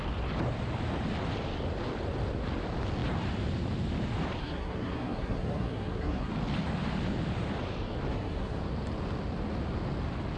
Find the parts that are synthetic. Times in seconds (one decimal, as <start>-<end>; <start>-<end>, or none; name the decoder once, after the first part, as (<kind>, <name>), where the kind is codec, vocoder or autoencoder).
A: 4.4-6.3 (codec, SNAC); 8.1-8.6